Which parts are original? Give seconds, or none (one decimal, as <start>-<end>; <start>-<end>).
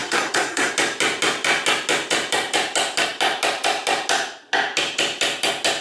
0.7-5.8